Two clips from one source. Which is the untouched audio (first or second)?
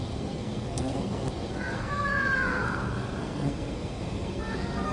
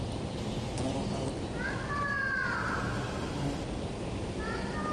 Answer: second